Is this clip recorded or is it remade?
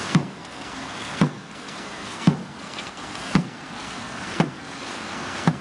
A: remade